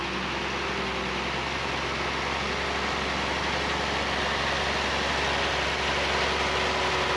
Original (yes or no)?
yes